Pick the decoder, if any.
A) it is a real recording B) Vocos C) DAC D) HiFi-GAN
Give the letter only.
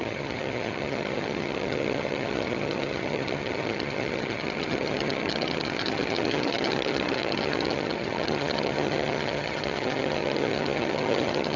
D